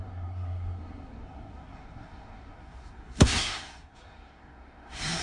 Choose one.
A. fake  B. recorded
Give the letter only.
A